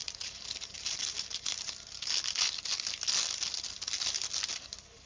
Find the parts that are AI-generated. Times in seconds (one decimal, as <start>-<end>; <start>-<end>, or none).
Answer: none